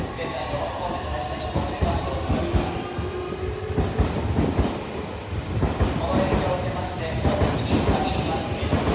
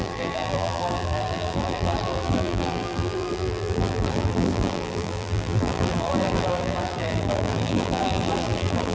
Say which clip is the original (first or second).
first